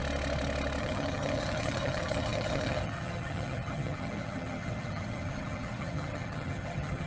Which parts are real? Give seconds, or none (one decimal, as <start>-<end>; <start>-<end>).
0.0-0.8